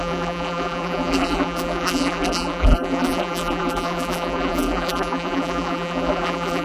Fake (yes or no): yes